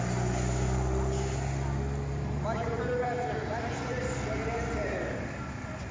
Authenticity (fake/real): real